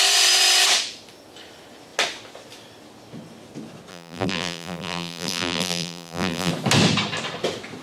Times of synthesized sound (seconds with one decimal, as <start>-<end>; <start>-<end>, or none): 3.9-6.5